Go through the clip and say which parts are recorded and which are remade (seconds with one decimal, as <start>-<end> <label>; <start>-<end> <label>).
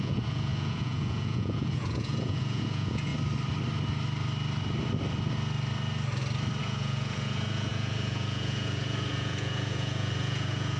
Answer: 0.0-3.1 remade; 3.1-6.6 recorded; 6.6-10.8 remade